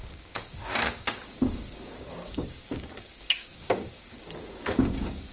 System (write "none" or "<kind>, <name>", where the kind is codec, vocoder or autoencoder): codec, DAC